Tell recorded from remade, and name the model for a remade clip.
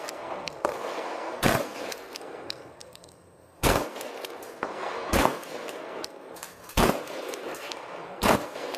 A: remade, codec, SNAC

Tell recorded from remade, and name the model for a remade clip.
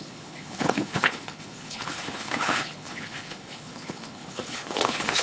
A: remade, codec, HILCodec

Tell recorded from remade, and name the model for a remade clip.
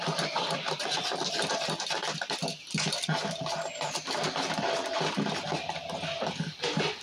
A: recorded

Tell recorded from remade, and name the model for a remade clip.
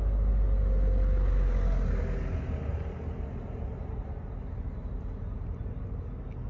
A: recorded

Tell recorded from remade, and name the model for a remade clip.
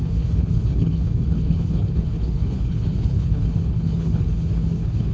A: remade, codec, HILCodec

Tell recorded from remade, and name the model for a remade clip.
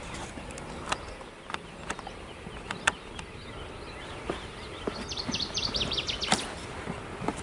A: remade, vocoder, BigVGAN v2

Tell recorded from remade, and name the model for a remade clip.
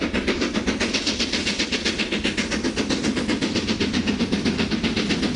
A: recorded